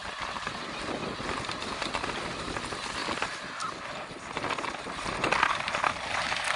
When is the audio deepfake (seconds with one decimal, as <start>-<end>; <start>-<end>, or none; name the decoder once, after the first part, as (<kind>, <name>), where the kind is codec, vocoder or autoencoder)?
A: none